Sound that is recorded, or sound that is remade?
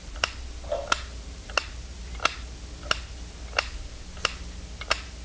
recorded